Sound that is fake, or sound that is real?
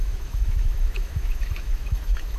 fake